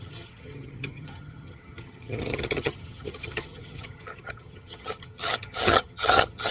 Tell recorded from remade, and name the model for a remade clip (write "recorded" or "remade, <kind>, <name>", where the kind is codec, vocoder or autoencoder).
remade, vocoder, HiFi-GAN